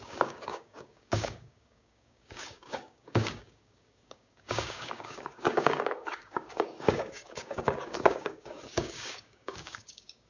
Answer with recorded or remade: remade